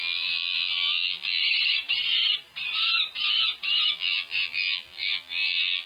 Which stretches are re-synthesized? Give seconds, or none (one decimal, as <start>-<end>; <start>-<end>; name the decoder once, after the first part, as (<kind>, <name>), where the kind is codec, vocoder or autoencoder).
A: 0.0-1.4 (vocoder, BigVGAN v2); 3.9-5.9